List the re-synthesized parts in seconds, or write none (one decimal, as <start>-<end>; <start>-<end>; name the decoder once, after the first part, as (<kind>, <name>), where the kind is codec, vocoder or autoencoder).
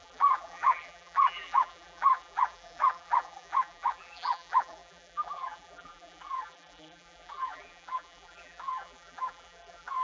0.0-10.0 (vocoder, BigVGAN v2)